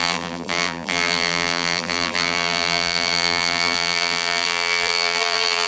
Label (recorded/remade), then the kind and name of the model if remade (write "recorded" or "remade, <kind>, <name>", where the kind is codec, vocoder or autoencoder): remade, vocoder, BigVGAN v2